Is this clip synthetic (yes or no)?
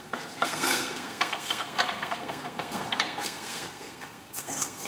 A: yes